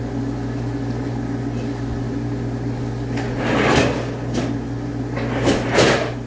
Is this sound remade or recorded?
recorded